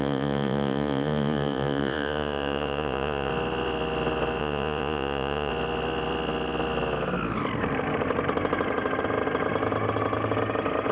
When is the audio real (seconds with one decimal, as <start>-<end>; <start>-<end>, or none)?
3.3-4.4; 5.5-10.9